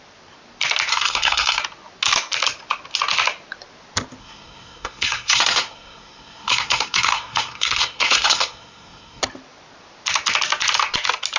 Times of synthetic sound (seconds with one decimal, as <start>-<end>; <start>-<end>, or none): 0.9-1.6; 4.2-9.2